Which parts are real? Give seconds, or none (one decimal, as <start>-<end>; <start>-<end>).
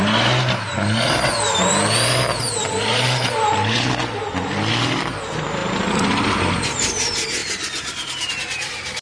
0.0-9.0